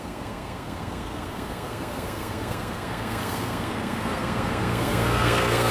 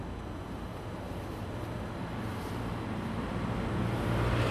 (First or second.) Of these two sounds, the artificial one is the first